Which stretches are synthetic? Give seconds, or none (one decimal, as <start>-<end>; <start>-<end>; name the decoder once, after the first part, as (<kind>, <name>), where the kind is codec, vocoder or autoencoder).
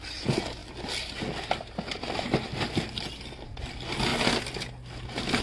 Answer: none